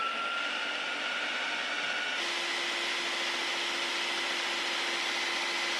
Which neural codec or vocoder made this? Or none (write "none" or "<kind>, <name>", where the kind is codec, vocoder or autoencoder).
none